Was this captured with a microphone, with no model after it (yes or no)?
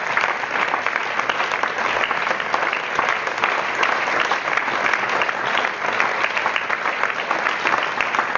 yes